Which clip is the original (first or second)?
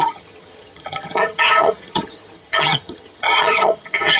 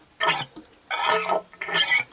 second